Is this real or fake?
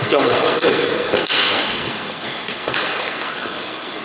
fake